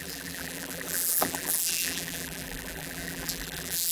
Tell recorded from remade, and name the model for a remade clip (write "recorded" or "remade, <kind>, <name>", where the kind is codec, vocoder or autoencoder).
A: remade, vocoder, BigVGAN v2